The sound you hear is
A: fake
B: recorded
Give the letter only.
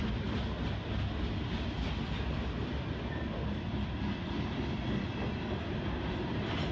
B